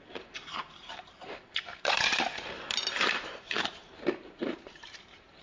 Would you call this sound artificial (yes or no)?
yes